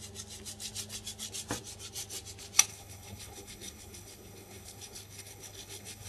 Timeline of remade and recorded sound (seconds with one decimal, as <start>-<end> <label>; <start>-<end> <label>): 0.0-2.7 recorded; 2.7-6.1 remade